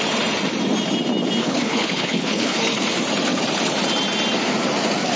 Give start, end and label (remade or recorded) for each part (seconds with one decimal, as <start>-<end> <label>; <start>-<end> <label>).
0.0-1.4 recorded; 1.4-2.6 remade; 2.6-5.2 recorded